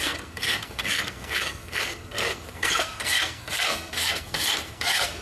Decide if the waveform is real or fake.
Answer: fake